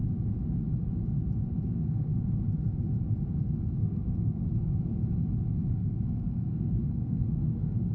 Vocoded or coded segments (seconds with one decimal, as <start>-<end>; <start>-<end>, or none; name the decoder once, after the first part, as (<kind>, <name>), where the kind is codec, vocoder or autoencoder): 1.6-2.1 (codec, SNAC); 3.7-4.9; 5.7-7.9